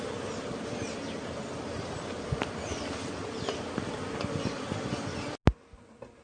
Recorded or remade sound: recorded